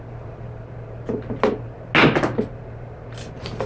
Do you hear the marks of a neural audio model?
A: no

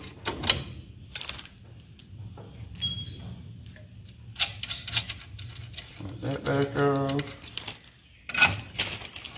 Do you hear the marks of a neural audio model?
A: no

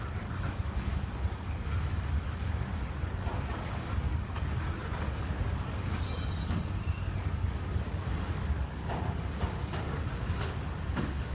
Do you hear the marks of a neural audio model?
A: yes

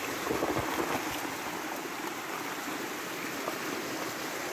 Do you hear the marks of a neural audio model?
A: no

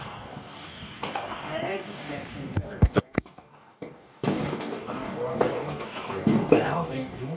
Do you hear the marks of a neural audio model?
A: yes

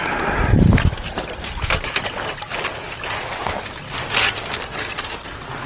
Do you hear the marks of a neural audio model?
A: no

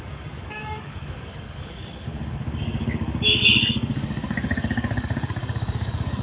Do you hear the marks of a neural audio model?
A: yes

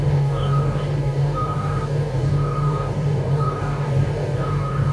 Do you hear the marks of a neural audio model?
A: yes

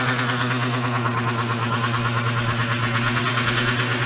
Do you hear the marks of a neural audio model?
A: no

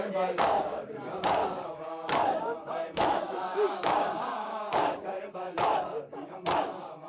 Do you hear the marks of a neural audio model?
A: yes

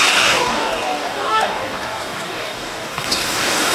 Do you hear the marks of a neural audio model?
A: yes